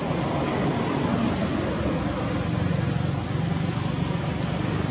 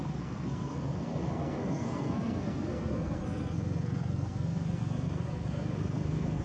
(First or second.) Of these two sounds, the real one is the first